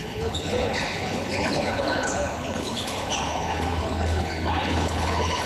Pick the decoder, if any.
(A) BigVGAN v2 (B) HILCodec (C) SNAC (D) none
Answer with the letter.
B